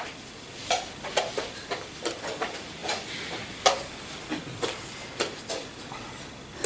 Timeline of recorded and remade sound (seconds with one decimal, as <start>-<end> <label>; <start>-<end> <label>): 0.0-6.7 recorded